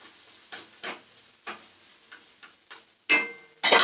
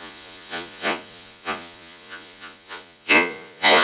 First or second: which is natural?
first